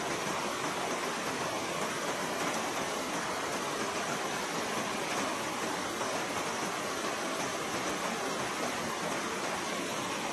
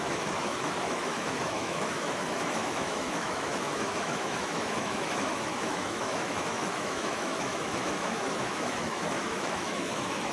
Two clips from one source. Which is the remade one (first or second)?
second